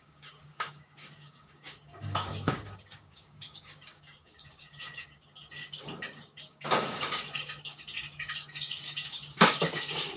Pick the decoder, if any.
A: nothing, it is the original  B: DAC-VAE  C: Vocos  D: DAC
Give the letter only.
D